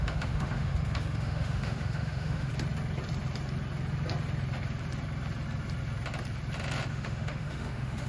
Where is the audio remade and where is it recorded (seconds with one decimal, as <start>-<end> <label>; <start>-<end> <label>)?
0.0-2.5 remade; 2.5-6.9 recorded; 6.9-8.1 remade